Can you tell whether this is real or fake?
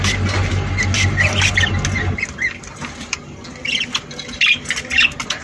real